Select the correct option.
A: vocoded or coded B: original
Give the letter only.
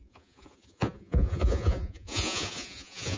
A